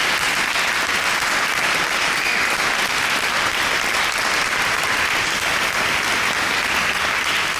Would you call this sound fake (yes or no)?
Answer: no